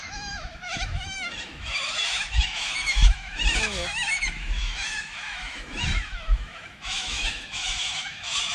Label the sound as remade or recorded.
remade